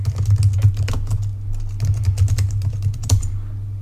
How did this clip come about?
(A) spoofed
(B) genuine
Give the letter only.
B